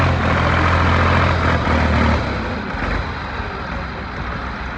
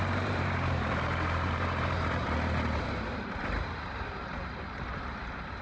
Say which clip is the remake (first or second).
second